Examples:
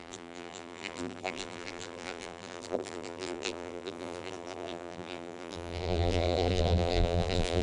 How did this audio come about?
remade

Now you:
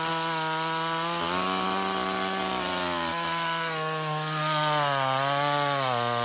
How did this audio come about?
recorded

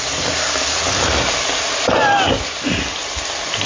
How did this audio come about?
recorded